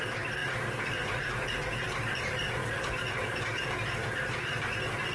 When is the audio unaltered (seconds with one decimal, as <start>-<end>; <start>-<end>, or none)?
0.0-2.6; 3.6-5.1